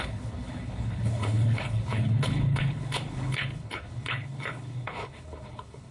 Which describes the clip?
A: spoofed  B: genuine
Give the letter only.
A